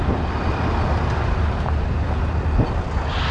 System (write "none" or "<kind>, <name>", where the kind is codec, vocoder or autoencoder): none